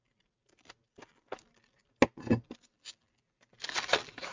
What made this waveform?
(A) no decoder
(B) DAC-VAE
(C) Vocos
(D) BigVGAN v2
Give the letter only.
A